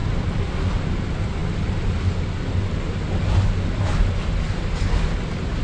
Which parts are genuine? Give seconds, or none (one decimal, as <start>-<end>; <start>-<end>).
0.0-5.6